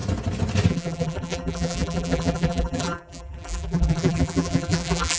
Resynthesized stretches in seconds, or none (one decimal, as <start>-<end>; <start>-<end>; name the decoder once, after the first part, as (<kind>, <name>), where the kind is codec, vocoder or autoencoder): 0.7-5.2 (vocoder, BigVGAN v2)